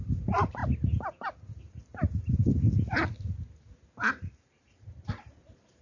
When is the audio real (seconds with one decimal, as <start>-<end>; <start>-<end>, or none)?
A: 0.6-4.1